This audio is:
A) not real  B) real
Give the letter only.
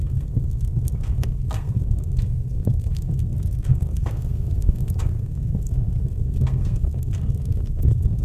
A